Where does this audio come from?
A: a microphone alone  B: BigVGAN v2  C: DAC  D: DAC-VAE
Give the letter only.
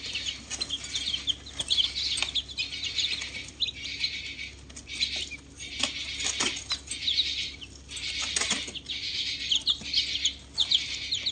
A